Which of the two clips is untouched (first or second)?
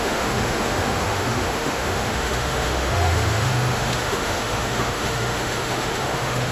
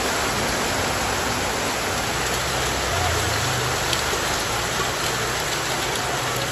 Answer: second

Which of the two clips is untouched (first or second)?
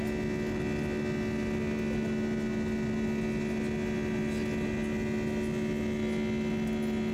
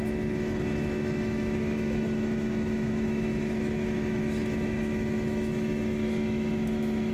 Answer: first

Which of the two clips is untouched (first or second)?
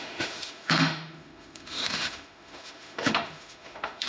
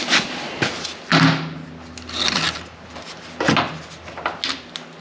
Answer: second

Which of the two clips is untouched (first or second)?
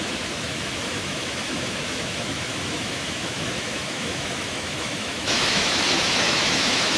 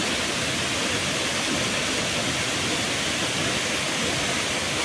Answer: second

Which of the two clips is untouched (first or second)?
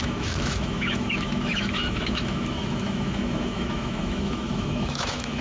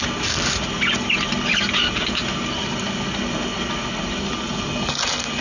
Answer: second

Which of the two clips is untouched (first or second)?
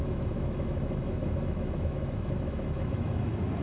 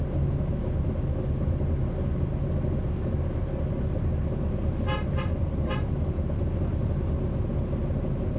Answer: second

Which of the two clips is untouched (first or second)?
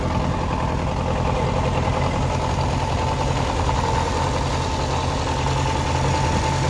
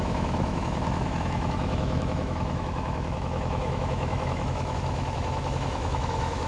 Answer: first